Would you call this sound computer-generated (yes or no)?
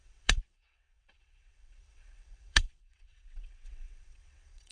yes